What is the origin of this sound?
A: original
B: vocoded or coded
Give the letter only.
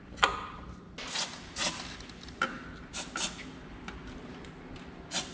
A